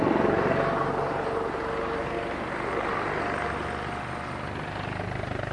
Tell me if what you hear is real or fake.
real